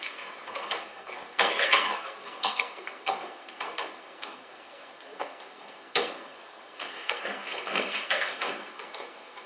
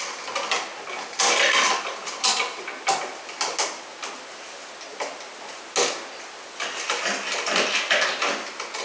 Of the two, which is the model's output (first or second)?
first